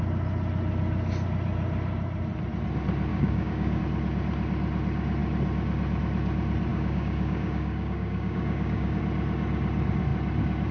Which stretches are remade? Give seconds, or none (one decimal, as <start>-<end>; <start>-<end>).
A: 3.1-3.8; 6.7-9.0